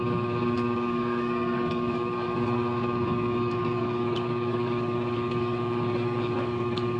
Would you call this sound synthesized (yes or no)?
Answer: yes